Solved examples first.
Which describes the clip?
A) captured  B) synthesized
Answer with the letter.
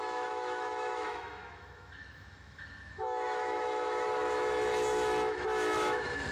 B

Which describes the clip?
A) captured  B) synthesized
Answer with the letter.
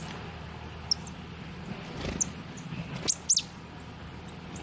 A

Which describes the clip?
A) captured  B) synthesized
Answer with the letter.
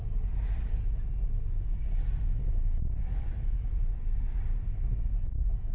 A